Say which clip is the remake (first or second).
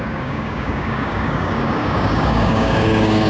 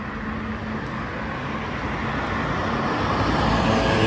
first